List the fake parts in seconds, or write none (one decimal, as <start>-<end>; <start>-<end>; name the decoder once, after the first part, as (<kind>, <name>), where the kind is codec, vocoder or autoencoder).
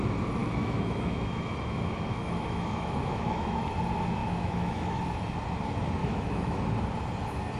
0.4-3.6 (autoencoder, DAC-VAE); 4.2-5.0; 6.0-6.6